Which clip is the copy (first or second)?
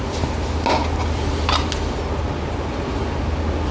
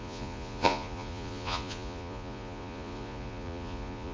second